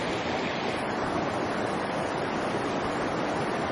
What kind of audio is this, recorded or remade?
remade